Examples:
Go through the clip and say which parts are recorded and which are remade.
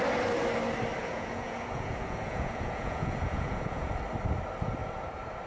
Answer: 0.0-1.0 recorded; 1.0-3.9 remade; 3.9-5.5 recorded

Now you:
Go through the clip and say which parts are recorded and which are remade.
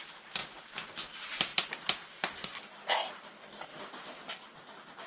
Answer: 0.0-0.4 recorded; 0.4-1.0 remade; 1.0-5.1 recorded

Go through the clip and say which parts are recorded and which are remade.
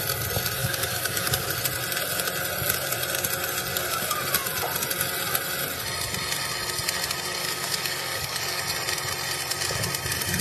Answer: 0.0-0.6 recorded; 0.6-1.5 remade; 1.5-7.4 recorded; 7.4-8.6 remade; 8.6-10.4 recorded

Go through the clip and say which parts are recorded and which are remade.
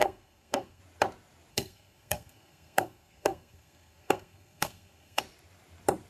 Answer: 0.0-0.8 remade; 0.8-1.5 recorded; 1.5-5.2 remade; 5.2-6.1 recorded